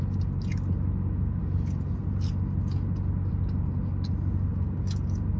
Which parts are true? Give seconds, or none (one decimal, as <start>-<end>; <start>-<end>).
0.0-5.4